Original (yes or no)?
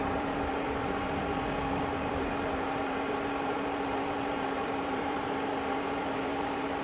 no